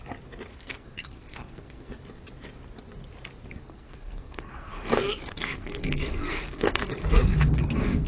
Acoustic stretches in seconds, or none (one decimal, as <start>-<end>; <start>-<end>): 0.0-0.5; 2.0-3.6